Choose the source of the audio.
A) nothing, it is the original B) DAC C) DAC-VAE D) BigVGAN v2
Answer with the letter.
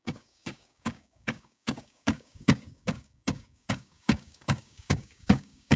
B